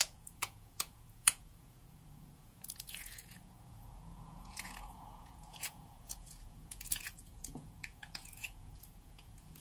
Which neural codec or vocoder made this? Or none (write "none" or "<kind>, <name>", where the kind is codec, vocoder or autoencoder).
vocoder, Vocos